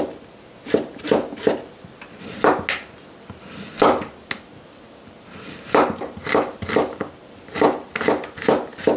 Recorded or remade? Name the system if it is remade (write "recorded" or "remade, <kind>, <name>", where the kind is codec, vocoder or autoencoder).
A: recorded